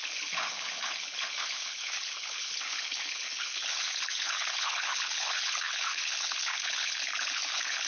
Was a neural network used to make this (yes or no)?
yes